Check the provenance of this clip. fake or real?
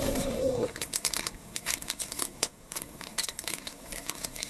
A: fake